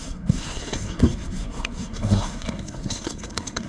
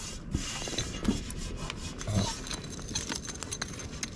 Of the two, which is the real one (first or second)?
second